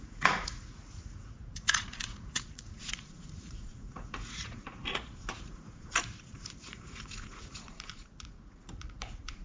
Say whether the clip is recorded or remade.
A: remade